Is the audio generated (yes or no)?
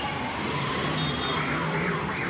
no